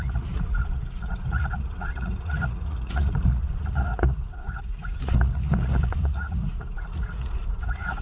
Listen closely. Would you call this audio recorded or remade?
remade